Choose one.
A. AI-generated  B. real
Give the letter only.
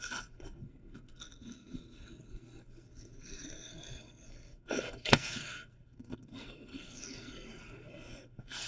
A